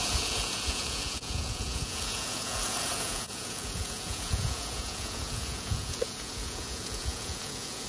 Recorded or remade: remade